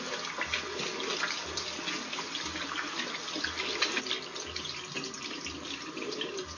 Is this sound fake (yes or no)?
no